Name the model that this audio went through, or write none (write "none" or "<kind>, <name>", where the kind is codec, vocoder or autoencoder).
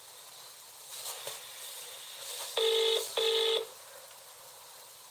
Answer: none